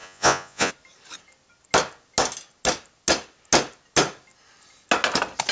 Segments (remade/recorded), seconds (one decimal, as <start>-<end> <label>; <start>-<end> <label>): 0.0-0.7 remade; 0.7-5.5 recorded